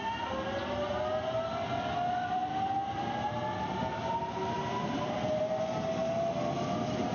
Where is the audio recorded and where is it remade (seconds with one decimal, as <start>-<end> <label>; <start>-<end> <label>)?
0.0-7.1 recorded